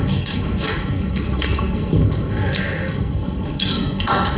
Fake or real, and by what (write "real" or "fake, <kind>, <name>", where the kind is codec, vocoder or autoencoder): fake, codec, SNAC